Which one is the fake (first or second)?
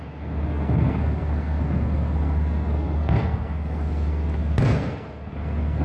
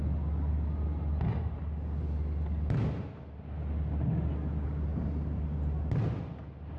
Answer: first